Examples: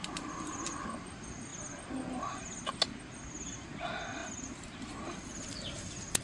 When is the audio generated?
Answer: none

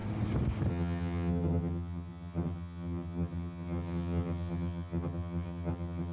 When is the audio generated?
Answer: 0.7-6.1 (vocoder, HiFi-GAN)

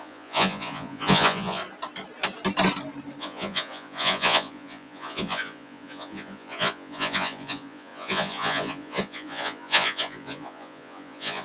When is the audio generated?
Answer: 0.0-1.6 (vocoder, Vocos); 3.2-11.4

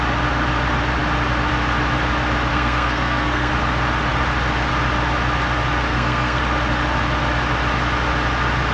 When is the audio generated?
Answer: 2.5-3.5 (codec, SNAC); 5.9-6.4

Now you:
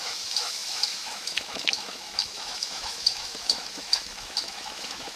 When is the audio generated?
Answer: 0.0-5.2 (autoencoder, DAC-VAE)

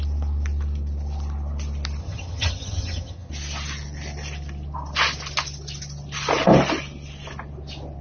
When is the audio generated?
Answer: 2.0-3.3 (vocoder, HiFi-GAN)